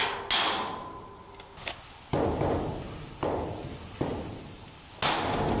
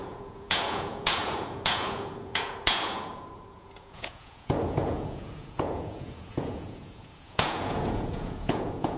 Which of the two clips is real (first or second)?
first